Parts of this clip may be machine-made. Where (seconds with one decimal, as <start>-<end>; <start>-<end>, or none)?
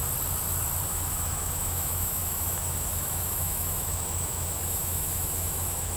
0.9-6.0